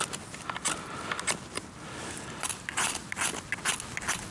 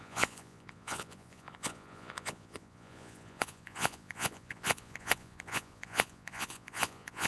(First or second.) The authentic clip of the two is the first